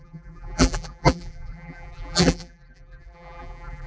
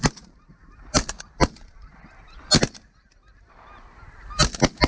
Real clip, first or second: second